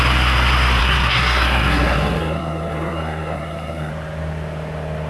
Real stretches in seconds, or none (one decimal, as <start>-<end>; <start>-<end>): 0.0-0.8; 3.9-5.1